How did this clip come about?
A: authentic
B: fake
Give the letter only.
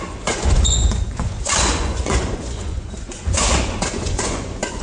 B